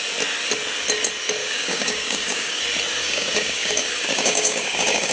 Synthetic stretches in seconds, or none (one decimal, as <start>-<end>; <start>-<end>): 1.4-2.6; 3.0-5.1